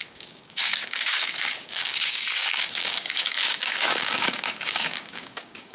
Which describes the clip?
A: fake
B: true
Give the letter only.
A